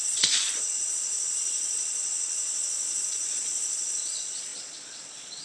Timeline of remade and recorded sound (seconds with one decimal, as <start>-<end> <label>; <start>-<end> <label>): 0.0-5.4 remade